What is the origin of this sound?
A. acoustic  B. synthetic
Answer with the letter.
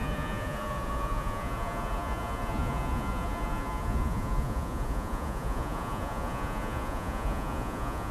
B